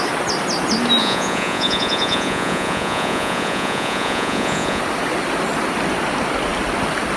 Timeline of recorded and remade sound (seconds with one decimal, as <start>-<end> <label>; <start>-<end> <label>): 0.0-1.0 recorded; 1.0-4.8 remade; 4.8-7.2 recorded